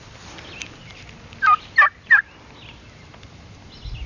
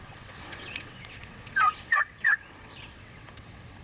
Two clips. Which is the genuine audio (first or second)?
first